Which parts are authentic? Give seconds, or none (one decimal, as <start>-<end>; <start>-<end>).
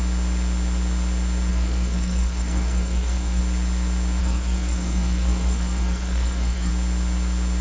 0.0-1.5; 3.4-4.2; 6.7-7.6